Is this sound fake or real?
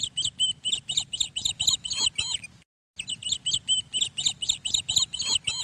real